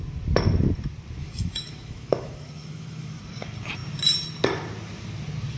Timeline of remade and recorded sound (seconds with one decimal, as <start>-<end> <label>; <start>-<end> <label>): 0.0-1.2 recorded; 1.2-3.2 remade; 3.2-5.6 recorded